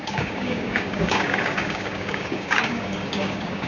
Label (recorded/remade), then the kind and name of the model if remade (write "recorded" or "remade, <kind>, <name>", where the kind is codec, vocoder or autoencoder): remade, codec, DAC